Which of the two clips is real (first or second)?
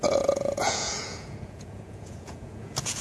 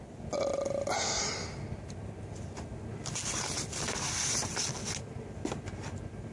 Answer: second